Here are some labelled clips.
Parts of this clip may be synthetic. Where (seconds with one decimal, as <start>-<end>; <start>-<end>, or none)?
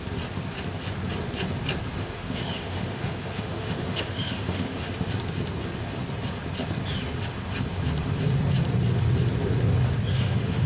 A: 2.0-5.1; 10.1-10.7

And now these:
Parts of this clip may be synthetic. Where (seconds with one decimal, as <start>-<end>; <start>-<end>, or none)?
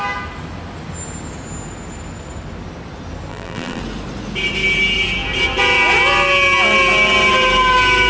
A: 3.3-3.8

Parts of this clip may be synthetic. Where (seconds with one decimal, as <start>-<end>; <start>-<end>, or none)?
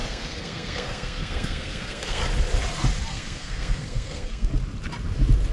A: 0.0-2.2; 3.1-4.5